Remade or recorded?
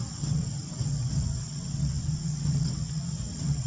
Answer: remade